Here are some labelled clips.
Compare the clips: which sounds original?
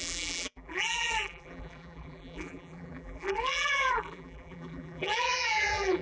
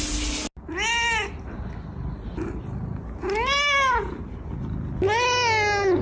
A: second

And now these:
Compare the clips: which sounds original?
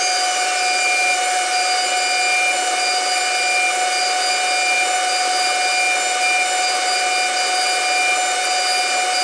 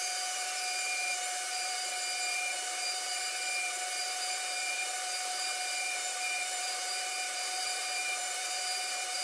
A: first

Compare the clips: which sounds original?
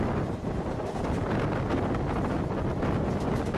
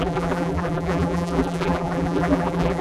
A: first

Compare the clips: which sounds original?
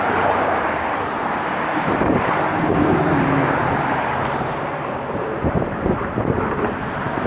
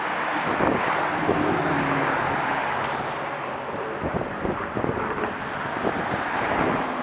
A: second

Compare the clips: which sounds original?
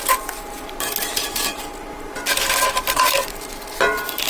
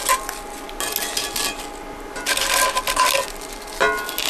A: second